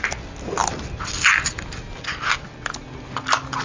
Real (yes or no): yes